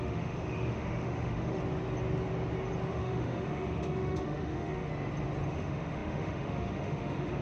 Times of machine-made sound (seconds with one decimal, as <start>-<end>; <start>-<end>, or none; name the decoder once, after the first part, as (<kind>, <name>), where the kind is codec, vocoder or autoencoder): 0.0-1.6 (autoencoder, DAC-VAE); 2.9-4.9; 5.5-7.4

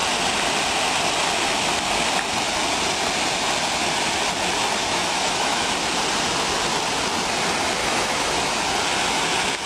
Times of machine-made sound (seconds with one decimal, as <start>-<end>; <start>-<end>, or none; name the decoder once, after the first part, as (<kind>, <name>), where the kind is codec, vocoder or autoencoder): 4.8-5.7 (autoencoder, DAC-VAE); 7.8-8.6

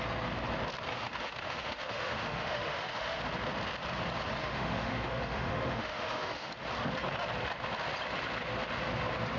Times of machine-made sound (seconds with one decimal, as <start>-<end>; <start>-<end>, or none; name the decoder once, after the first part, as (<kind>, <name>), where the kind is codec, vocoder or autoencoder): 0.9-3.2 (autoencoder, DAC-VAE); 4.4-6.5

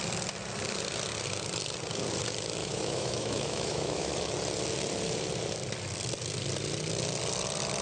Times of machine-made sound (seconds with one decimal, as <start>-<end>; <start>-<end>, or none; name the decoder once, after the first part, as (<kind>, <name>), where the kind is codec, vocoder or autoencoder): 2.6-4.1 (autoencoder, DAC-VAE)

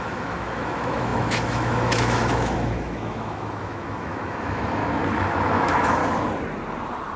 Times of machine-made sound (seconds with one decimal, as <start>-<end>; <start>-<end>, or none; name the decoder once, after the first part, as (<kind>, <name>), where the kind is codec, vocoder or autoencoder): 0.0-4.8 (autoencoder, DAC-VAE); 5.5-6.0